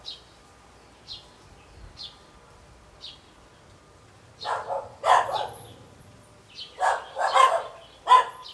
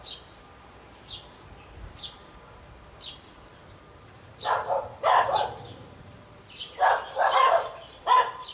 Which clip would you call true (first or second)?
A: first